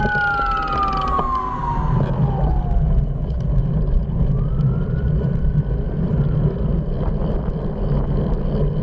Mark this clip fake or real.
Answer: real